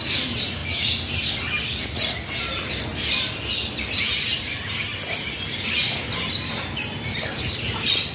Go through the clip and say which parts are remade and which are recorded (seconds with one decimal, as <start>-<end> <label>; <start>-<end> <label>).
0.0-8.1 recorded